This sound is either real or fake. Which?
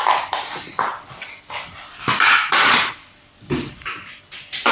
real